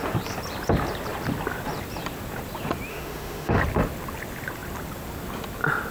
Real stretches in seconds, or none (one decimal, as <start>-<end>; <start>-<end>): 0.0-2.9; 3.6-5.9